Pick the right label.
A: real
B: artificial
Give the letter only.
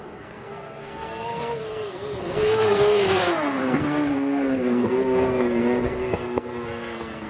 B